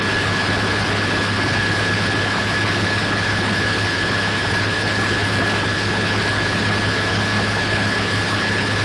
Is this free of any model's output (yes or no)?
no